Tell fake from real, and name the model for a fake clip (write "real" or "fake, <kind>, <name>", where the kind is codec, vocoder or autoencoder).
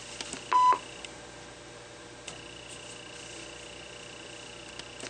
real